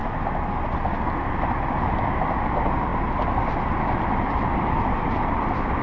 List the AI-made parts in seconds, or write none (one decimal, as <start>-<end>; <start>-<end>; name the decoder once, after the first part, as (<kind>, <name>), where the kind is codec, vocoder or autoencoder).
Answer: 1.3-5.8 (vocoder, BigVGAN v2)